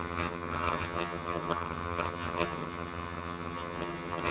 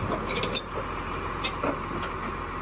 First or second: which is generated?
first